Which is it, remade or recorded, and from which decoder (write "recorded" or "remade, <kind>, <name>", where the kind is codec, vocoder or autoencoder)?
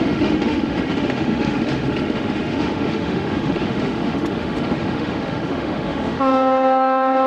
remade, autoencoder, DAC-VAE